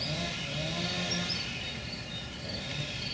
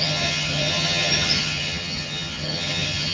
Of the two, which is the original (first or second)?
first